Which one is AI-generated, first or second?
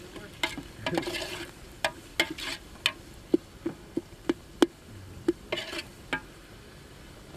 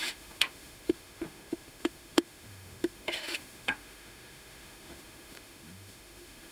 second